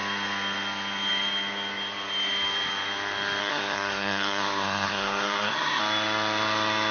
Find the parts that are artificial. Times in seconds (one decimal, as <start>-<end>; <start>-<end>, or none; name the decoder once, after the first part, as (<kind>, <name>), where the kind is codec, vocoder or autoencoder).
3.4-5.8 (codec, SNAC)